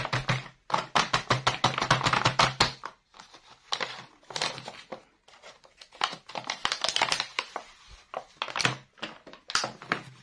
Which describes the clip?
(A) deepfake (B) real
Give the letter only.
B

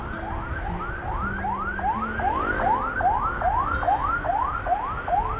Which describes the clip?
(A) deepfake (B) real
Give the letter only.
B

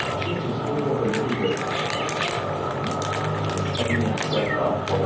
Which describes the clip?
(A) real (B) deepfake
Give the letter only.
A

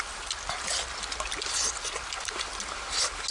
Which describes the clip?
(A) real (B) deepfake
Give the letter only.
A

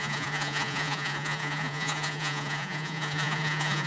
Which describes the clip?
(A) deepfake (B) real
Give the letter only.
A